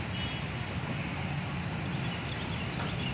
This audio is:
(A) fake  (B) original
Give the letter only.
B